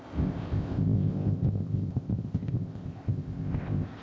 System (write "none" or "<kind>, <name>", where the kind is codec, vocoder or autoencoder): codec, ZipCodec